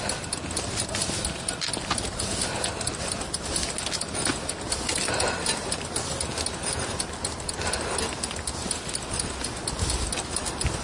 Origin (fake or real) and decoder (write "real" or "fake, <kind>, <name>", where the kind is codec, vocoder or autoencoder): real